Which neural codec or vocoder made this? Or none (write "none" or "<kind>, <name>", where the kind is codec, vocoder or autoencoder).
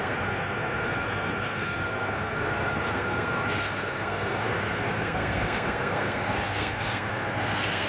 codec, SNAC